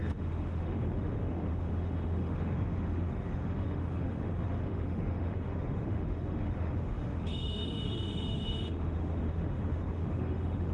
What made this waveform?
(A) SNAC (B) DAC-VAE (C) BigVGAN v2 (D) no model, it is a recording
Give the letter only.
B